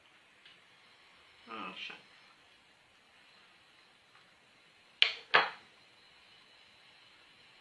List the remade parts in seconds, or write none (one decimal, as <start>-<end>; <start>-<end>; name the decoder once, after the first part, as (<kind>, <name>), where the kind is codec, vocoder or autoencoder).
none